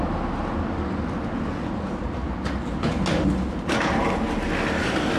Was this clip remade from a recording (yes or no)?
no